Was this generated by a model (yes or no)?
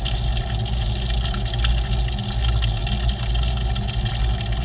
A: no